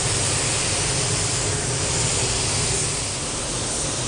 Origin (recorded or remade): recorded